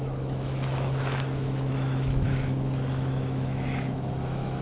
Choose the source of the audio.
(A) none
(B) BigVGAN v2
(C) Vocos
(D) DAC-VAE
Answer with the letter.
D